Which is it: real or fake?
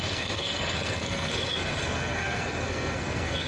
fake